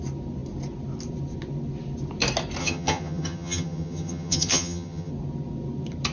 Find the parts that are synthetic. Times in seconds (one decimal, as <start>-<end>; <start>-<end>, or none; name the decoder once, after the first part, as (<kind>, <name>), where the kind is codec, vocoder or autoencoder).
2.6-5.1 (vocoder, HiFi-GAN)